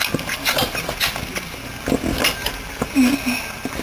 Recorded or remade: recorded